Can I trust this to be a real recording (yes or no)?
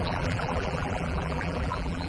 no